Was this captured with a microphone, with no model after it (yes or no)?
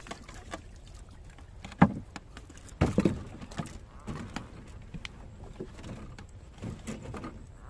yes